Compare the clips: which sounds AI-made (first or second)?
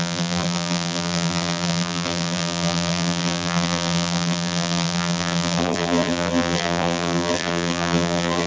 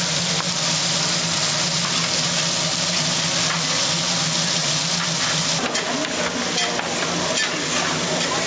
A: first